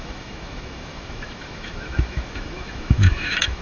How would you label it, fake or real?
fake